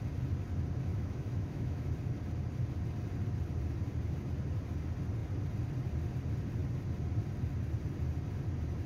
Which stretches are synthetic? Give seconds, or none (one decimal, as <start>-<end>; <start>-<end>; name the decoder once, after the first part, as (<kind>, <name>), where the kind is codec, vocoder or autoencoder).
0.9-1.9 (autoencoder, DAC-VAE)